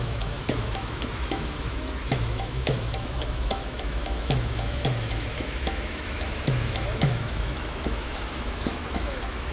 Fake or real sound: fake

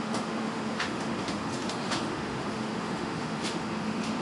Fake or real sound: fake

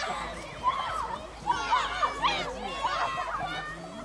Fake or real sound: real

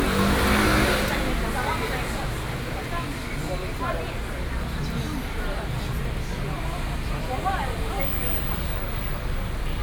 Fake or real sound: real